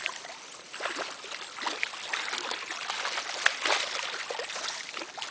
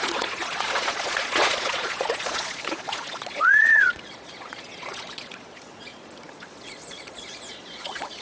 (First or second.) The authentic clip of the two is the first